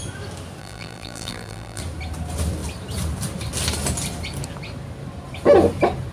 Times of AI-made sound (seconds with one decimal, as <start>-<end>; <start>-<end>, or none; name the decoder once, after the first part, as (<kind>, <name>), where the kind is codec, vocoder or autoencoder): 0.6-1.8 (vocoder, BigVGAN v2)